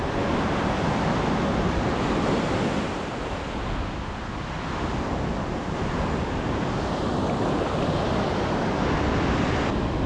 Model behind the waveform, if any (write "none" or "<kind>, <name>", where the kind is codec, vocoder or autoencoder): none